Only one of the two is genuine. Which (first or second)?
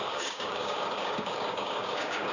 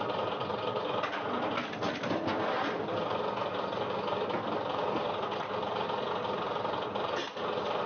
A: second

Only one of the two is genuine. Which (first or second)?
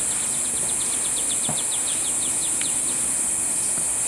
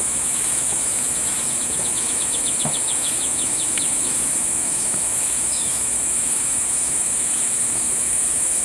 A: first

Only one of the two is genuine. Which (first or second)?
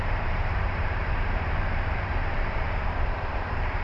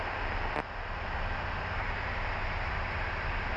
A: second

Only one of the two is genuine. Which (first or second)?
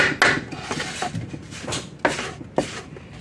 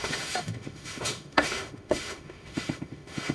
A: first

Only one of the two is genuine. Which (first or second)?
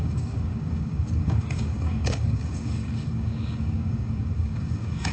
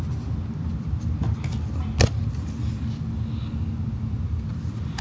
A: second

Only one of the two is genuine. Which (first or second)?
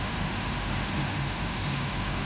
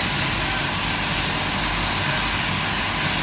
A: second